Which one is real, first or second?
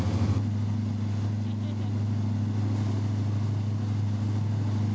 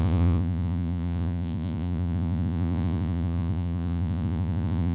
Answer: first